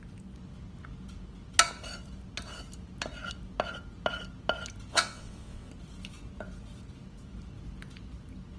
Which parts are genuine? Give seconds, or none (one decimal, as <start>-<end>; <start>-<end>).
0.0-4.9; 5.7-8.6